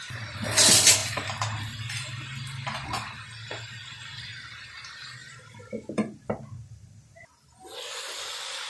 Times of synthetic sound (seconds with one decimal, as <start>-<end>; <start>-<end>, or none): 5.2-7.3